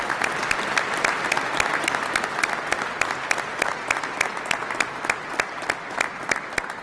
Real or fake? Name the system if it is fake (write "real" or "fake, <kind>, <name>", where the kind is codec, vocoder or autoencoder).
real